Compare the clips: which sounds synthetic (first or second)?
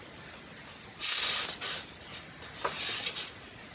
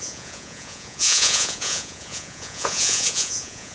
second